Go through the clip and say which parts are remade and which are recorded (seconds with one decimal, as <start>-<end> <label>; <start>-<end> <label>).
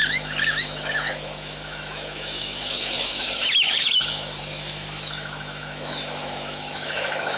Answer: 0.0-7.4 remade